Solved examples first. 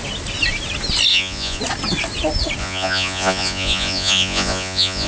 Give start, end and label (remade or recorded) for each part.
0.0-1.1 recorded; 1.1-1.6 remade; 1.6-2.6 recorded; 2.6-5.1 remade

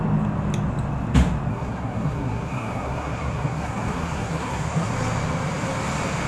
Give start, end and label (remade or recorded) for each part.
0.0-1.5 recorded; 1.5-4.9 remade; 4.9-6.3 recorded

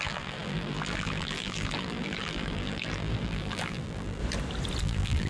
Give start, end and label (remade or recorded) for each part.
0.0-4.2 remade; 4.2-4.8 recorded; 4.8-5.3 remade

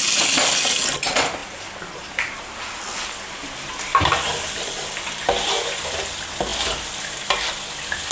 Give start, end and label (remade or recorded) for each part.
0.0-8.1 recorded

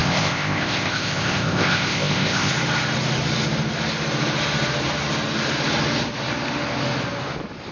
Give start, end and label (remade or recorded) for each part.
0.0-2.5 remade; 2.5-7.7 recorded

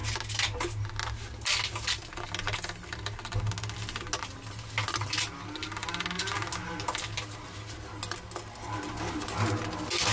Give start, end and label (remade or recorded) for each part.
0.0-10.1 recorded